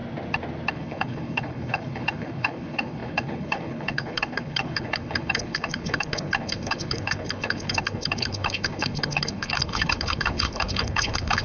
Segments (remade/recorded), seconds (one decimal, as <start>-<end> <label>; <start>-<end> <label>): 0.0-0.7 recorded; 0.7-11.4 remade